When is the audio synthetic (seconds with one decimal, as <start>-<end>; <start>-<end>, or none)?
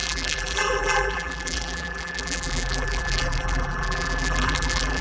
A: 0.0-5.0